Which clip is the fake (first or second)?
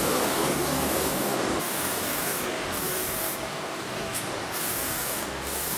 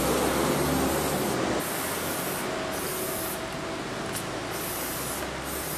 first